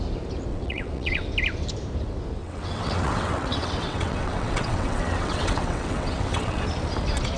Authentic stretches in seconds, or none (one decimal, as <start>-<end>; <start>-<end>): 0.0-0.5; 1.3-2.4; 6.6-7.4